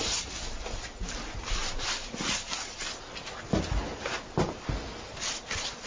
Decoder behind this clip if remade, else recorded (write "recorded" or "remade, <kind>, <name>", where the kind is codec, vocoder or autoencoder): recorded